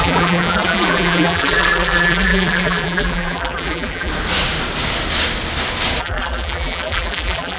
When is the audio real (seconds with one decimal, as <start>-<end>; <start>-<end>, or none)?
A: 4.1-6.0